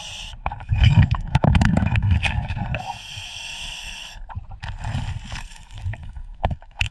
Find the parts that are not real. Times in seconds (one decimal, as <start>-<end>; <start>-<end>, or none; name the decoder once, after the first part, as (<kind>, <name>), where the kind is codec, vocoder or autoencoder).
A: 0.4-4.3 (codec, SNAC); 5.4-6.9

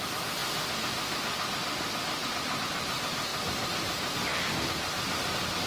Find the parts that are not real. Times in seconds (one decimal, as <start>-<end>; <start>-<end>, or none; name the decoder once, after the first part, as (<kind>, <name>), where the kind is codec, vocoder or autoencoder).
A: 3.3-4.6 (vocoder, BigVGAN v2)

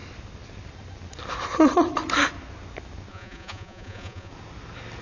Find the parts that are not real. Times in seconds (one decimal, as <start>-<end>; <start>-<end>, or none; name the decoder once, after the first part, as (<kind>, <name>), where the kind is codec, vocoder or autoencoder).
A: 3.1-4.3 (vocoder, Vocos)

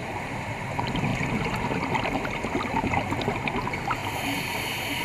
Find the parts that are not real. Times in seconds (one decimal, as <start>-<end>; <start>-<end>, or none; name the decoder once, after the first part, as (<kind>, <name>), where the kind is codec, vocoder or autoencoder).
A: 0.0-0.6 (vocoder, BigVGAN v2); 1.1-2.9

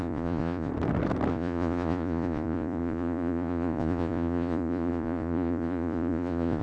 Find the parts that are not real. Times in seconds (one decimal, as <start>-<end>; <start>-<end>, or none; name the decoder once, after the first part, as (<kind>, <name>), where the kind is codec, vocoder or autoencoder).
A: 0.0-0.7 (vocoder, Vocos); 1.3-6.6

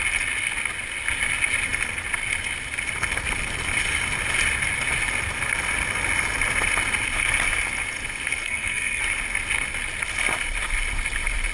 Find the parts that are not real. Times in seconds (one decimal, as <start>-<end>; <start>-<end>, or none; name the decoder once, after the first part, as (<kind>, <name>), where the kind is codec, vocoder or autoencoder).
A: 8.4-9.0 (codec, SNAC)